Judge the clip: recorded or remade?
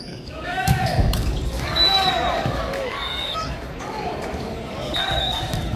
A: remade